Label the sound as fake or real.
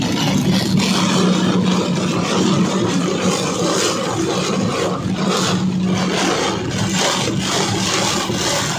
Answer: real